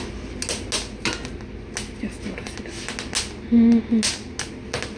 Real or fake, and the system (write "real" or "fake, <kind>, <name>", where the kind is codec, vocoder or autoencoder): real